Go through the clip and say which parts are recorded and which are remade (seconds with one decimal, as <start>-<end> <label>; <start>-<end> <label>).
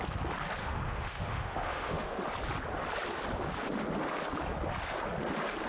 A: 0.0-0.6 recorded; 0.6-2.3 remade; 2.3-5.7 recorded